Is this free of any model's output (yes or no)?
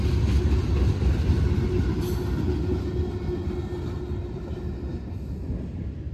yes